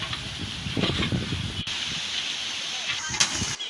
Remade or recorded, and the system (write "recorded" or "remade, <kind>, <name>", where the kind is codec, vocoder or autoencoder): recorded